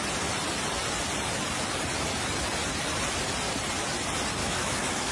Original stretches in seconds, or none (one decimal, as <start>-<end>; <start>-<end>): 0.0-4.4